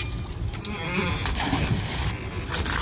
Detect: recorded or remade recorded